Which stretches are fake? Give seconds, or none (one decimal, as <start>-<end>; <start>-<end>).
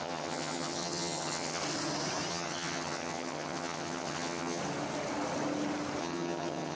0.0-1.6; 2.3-4.6; 6.0-6.8